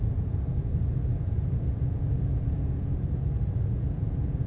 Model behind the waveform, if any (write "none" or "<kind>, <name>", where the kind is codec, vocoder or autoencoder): vocoder, Vocos